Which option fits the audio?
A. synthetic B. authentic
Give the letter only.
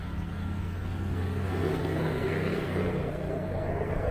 A